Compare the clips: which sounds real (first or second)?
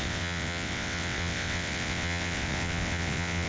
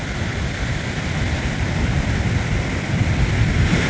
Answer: second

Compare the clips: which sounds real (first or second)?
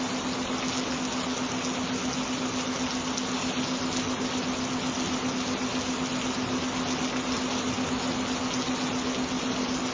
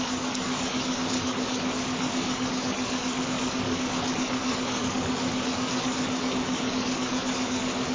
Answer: first